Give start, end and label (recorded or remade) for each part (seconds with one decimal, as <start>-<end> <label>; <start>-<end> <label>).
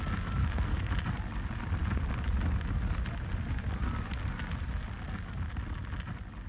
0.0-0.4 recorded; 0.4-0.9 remade; 0.9-6.5 recorded